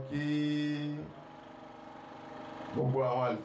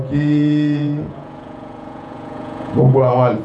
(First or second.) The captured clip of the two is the first